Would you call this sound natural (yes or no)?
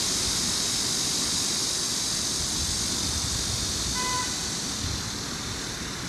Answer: yes